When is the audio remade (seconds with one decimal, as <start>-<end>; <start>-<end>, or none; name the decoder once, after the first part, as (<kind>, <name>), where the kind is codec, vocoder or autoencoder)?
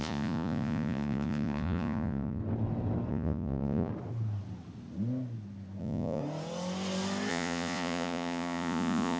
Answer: 0.0-2.4 (vocoder, Vocos); 3.1-3.9; 5.8-6.2; 7.3-9.2